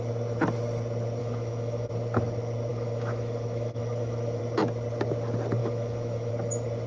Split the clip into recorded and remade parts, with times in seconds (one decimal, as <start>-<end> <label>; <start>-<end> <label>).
0.0-1.2 recorded; 1.2-1.9 remade; 1.9-2.7 recorded; 2.7-4.4 remade; 4.4-5.6 recorded; 5.6-6.3 remade; 6.3-6.9 recorded